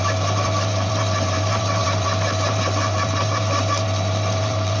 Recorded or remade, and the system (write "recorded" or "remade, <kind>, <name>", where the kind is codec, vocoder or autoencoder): remade, vocoder, BigVGAN v2